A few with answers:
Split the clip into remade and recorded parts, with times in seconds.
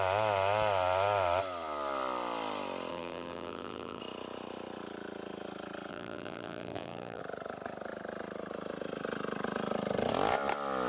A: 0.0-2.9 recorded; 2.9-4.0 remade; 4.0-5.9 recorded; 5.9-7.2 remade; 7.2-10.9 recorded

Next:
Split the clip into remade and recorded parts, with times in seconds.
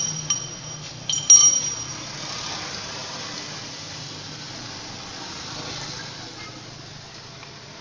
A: 0.0-7.8 recorded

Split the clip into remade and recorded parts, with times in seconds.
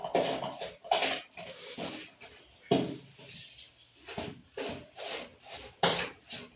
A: 0.0-5.3 recorded; 5.3-6.1 remade; 6.1-6.6 recorded